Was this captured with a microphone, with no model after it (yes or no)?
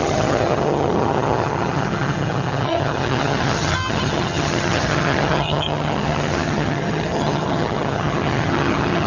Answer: no